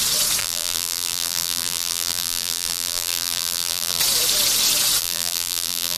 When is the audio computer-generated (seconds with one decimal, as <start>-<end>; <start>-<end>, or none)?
0.4-4.0; 5.0-6.0

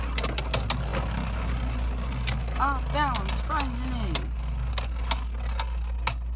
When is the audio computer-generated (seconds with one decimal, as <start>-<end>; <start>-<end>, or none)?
none

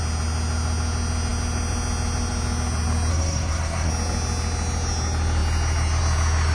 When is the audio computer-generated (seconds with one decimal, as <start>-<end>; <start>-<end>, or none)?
3.1-3.9

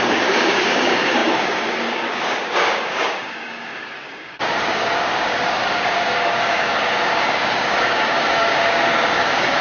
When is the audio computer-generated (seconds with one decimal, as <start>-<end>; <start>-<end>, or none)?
0.0-9.6

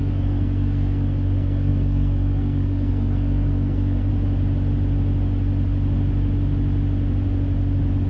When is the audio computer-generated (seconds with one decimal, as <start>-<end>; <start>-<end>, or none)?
0.0-4.1

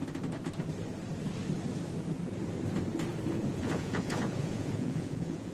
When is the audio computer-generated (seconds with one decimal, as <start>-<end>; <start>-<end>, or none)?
3.3-5.5

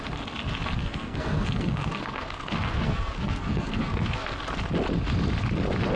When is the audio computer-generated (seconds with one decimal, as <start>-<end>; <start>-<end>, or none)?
0.8-4.4

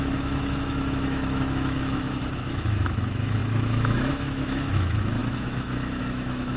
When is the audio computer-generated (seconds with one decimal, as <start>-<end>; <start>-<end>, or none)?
0.0-6.6